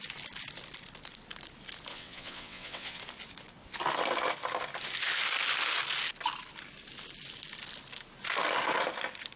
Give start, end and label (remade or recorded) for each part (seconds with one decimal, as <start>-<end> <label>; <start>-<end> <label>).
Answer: 0.0-1.9 recorded; 1.9-3.0 remade; 3.0-9.4 recorded